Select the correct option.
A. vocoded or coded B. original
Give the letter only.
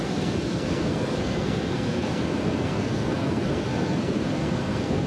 A